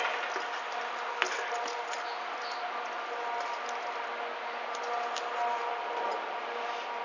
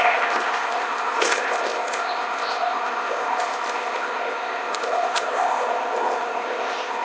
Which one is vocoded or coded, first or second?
second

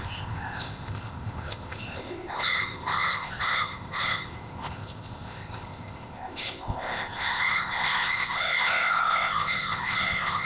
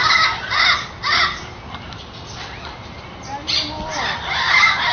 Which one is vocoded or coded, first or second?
first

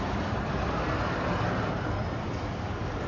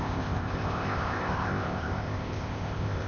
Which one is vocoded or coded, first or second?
second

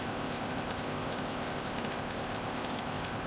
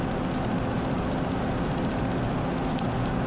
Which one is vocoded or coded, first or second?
first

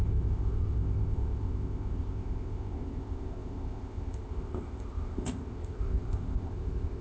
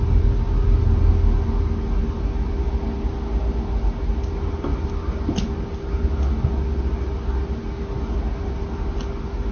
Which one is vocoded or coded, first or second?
first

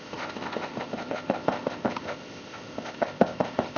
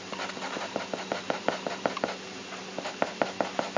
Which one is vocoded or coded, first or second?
first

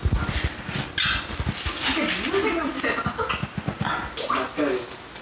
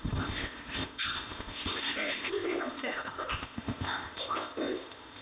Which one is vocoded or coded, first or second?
second